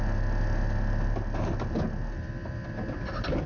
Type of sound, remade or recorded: recorded